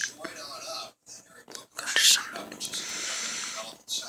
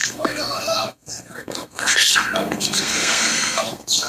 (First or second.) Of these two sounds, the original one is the first